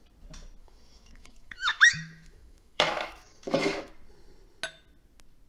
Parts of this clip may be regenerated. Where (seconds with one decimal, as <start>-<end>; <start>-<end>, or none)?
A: 0.6-3.9